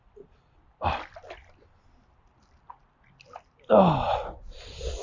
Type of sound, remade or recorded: recorded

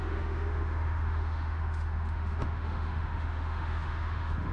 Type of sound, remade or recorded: remade